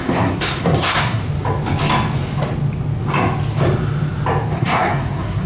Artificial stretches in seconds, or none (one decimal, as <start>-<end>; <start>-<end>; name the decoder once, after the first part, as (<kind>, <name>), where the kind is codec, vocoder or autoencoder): 0.0-1.2 (codec, SNAC); 4.5-5.5